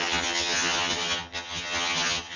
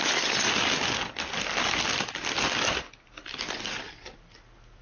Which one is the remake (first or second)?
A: first